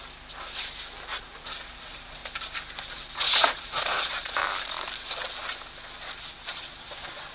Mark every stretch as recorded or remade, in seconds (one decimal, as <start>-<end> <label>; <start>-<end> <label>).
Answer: 0.0-1.2 recorded; 1.2-2.2 remade; 2.2-2.9 recorded; 2.9-4.4 remade; 4.4-6.2 recorded; 6.2-7.3 remade